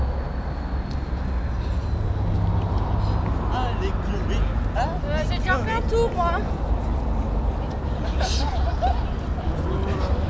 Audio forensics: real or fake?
real